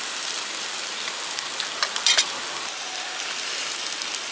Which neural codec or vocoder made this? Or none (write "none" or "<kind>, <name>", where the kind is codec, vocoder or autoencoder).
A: none